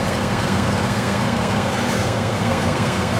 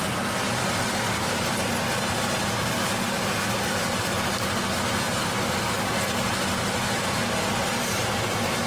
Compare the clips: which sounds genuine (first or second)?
second